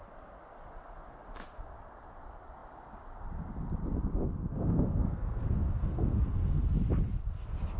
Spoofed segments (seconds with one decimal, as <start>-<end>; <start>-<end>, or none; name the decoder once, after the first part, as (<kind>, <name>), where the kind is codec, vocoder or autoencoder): 4.5-6.6 (codec, SNAC)